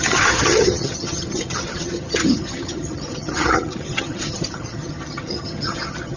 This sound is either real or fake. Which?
fake